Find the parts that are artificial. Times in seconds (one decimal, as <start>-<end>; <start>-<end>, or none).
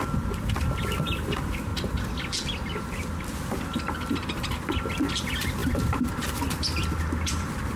0.0-1.7; 3.1-7.8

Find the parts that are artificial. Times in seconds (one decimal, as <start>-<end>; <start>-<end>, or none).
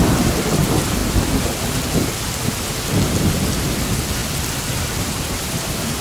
none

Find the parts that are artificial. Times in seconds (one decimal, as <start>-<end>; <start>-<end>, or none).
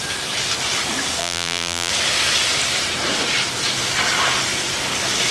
1.2-1.9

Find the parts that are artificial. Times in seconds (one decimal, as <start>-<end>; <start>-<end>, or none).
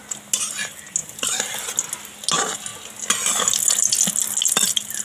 none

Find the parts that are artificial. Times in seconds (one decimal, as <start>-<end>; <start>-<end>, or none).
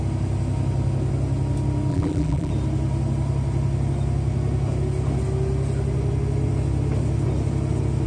1.9-2.5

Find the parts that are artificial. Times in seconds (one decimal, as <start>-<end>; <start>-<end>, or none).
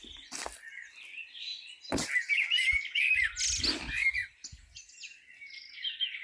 none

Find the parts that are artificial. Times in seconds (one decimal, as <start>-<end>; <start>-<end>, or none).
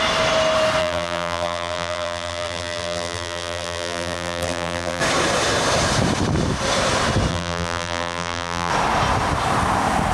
0.8-5.0; 7.3-8.7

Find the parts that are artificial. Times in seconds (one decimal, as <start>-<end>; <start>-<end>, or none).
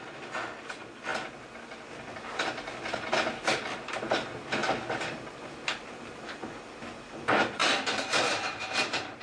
7.6-9.2